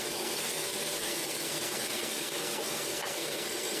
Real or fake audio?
fake